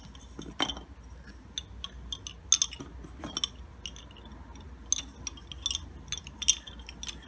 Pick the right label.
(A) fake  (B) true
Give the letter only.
B